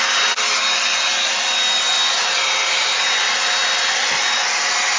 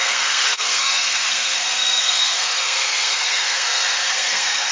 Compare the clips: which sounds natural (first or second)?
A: first